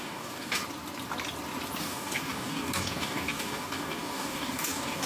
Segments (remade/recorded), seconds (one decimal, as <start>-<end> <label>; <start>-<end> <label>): 0.0-0.6 remade; 0.6-1.8 recorded; 1.8-5.1 remade